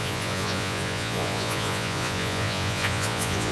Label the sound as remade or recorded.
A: remade